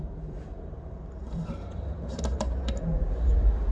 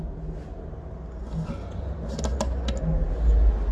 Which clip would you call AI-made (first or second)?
first